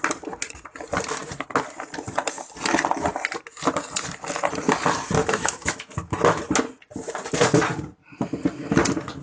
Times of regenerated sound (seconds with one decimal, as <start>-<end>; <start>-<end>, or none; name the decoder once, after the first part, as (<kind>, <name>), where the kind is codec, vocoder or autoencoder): 5.2-6.4 (autoencoder, DAC-VAE)